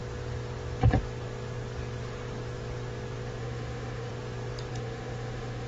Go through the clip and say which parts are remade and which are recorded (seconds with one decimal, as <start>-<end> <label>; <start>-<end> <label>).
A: 0.0-3.4 recorded; 3.4-4.1 remade; 4.1-4.7 recorded; 4.7-5.7 remade